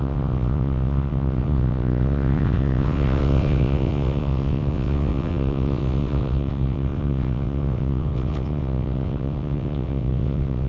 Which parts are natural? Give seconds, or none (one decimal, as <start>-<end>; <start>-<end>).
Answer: none